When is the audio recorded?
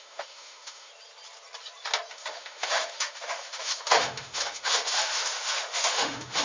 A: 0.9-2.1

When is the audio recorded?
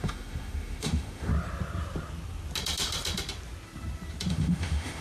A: 1.3-4.3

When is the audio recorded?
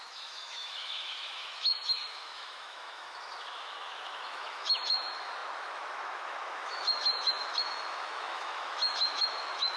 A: none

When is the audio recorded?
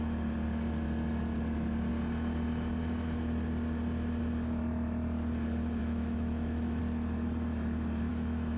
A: 0.0-5.8; 6.8-8.1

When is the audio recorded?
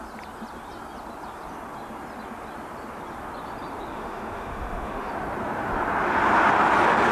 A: 0.0-3.9; 5.1-7.1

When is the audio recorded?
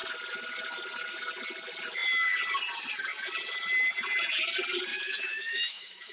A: 0.0-4.9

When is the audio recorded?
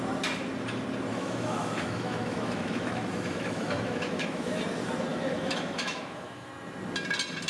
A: 0.0-1.1; 4.6-5.1; 6.5-7.5